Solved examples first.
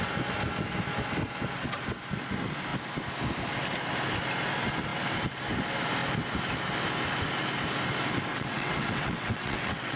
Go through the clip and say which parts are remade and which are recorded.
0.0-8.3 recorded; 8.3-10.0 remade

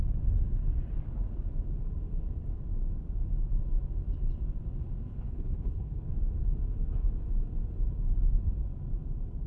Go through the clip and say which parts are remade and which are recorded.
0.0-5.1 recorded; 5.1-6.1 remade; 6.1-9.5 recorded

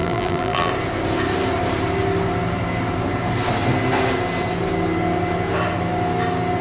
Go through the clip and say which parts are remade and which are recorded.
0.0-0.7 remade; 0.7-6.6 recorded